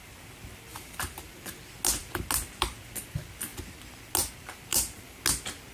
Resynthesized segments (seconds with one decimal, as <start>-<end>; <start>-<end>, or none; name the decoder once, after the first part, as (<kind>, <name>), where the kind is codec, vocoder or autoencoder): 0.7-1.5 (vocoder, BigVGAN v2); 4.7-5.2